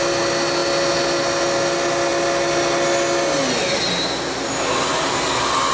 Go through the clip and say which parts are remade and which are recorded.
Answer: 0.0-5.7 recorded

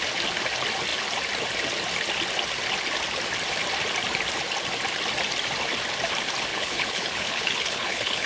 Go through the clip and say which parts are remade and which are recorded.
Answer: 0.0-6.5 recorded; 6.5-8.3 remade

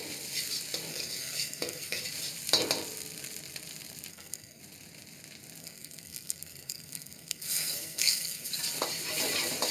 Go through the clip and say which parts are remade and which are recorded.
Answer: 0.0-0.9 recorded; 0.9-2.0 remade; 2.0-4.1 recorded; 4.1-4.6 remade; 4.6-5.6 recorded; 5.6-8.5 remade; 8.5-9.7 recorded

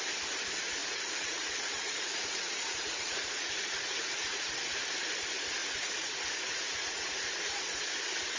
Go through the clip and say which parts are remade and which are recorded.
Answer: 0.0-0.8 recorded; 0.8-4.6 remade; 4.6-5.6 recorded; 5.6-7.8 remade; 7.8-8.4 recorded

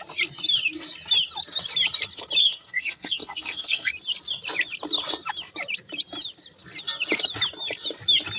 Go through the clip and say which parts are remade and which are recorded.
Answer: 0.0-2.4 recorded; 2.4-3.9 remade; 3.9-8.4 recorded